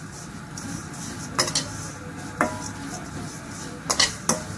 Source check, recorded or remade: recorded